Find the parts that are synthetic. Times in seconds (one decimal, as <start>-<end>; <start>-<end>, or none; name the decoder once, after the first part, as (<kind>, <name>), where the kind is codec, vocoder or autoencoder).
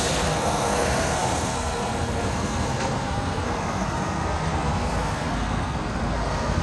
0.0-6.6 (codec, SNAC)